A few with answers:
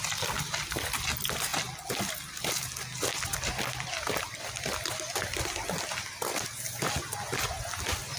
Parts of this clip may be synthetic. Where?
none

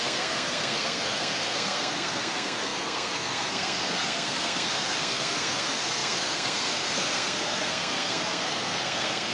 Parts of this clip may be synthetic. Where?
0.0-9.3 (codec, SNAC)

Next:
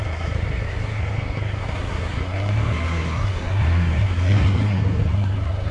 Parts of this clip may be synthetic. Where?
0.0-5.7 (codec, SNAC)

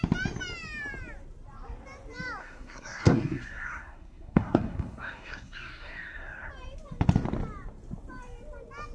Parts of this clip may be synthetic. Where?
2.4-6.5 (codec, SNAC)